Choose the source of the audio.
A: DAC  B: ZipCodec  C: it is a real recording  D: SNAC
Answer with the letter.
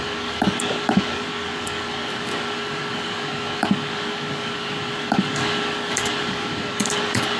A